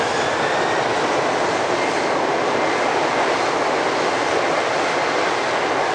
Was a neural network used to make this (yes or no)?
no